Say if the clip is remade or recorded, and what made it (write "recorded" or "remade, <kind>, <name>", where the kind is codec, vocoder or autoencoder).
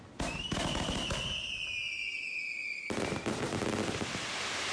recorded